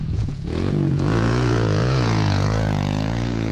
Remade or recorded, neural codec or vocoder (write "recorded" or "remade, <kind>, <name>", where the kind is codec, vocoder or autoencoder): remade, vocoder, Vocos